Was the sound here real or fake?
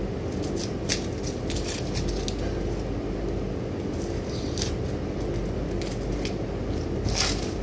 real